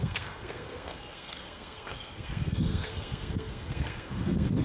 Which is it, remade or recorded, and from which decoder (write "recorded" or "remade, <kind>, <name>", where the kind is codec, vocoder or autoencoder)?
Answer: remade, codec, SNAC